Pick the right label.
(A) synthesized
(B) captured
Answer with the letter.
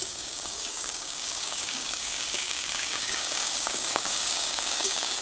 A